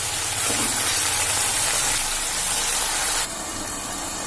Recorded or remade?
recorded